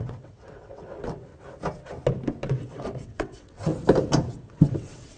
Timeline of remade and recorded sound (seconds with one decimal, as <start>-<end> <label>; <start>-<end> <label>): 0.0-1.3 remade; 1.3-2.5 recorded; 2.5-3.7 remade; 3.7-4.3 recorded; 4.3-5.2 remade